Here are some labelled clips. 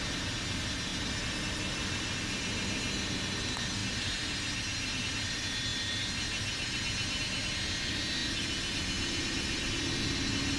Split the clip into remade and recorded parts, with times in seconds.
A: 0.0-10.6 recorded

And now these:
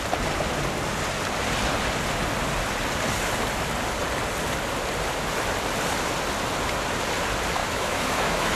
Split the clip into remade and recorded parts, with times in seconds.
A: 0.0-7.6 recorded; 7.6-8.5 remade

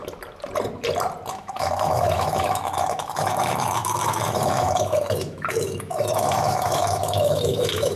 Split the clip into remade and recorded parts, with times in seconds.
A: 0.0-1.3 recorded; 1.3-8.0 remade

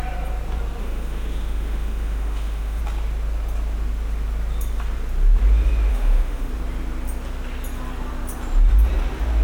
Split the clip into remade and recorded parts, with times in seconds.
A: 0.0-0.8 recorded; 0.8-2.8 remade; 2.8-5.9 recorded; 5.9-6.5 remade; 6.5-9.4 recorded

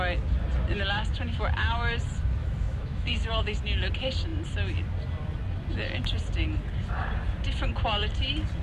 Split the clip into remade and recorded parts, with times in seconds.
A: 0.0-2.4 recorded; 2.4-3.3 remade; 3.3-8.6 recorded

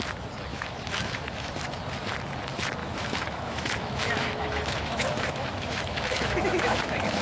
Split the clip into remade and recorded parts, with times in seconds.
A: 0.0-0.5 recorded; 0.5-1.5 remade; 1.5-2.8 recorded; 2.8-7.2 remade

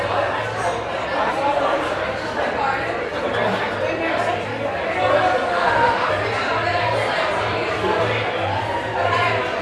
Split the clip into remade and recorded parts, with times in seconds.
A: 0.0-5.5 recorded; 5.5-6.1 remade; 6.1-9.6 recorded